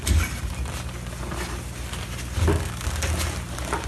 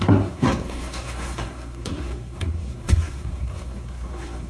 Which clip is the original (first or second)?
first